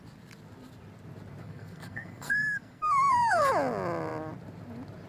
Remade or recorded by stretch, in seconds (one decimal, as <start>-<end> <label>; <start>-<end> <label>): 0.0-1.4 recorded; 1.4-3.5 remade; 3.5-5.1 recorded